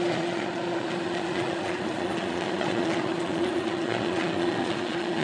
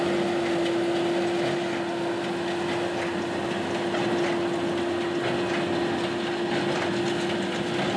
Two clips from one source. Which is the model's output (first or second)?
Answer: first